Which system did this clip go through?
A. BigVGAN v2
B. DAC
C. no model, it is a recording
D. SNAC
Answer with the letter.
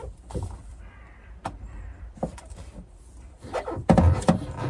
A